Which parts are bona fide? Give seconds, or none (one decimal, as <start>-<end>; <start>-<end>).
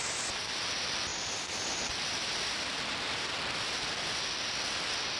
0.0-5.2